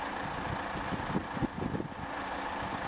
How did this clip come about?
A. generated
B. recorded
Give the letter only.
B